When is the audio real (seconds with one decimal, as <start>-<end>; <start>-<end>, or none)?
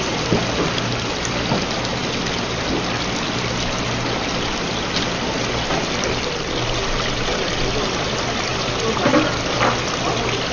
0.0-10.5